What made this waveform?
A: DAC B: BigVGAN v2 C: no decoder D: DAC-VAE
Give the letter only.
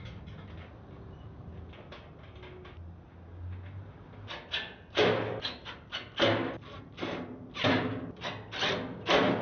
C